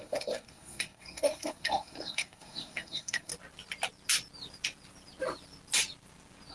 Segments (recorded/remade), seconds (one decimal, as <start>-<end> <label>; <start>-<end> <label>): 0.0-3.3 remade; 3.3-6.5 recorded